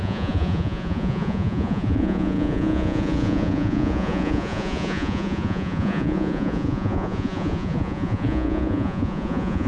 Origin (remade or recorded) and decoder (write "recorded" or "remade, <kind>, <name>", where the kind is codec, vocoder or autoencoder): remade, vocoder, Vocos